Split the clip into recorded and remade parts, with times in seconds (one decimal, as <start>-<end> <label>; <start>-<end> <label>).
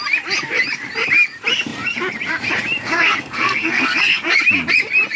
0.0-2.8 recorded; 2.8-4.2 remade; 4.2-5.2 recorded